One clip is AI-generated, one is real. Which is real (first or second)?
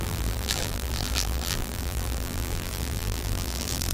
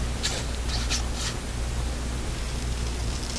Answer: second